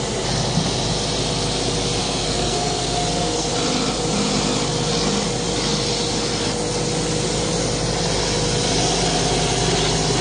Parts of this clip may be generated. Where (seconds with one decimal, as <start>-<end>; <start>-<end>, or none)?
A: 2.0-3.5